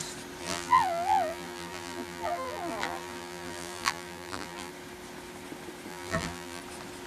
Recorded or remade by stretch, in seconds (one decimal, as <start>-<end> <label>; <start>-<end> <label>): 0.0-0.4 recorded; 0.4-4.7 remade; 4.7-5.9 recorded; 5.9-6.6 remade; 6.6-7.1 recorded